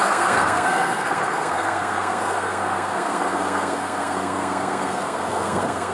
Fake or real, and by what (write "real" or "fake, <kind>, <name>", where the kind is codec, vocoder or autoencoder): fake, codec, SNAC